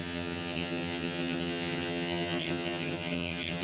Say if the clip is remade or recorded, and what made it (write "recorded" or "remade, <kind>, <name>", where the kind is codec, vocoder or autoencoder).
remade, vocoder, HiFi-GAN